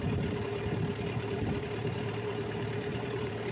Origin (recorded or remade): remade